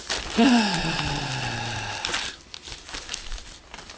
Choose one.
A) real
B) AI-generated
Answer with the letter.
A